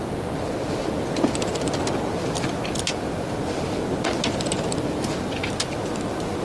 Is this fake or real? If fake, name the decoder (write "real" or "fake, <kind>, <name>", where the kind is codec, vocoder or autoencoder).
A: real